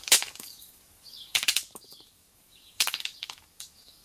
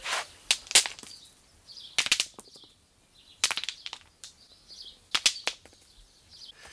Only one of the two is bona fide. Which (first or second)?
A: second